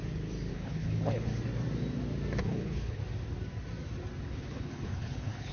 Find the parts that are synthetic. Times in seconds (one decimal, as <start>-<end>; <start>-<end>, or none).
0.5-1.3; 2.4-3.0; 4.3-5.5